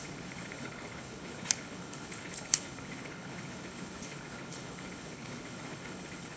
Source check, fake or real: fake